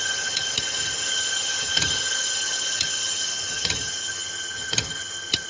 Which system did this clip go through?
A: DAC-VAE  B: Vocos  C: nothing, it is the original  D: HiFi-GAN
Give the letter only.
D